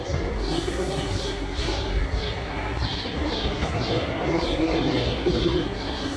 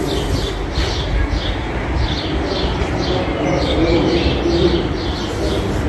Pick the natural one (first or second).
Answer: second